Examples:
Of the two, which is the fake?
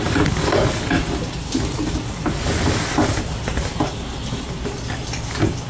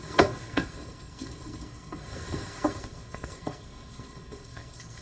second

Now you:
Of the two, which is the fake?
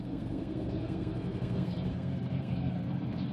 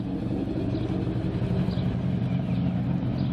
first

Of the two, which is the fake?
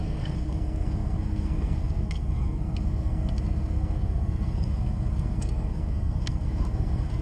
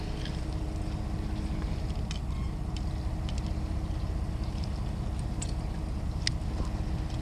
first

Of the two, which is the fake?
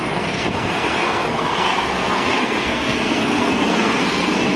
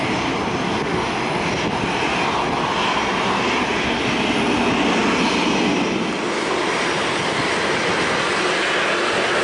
first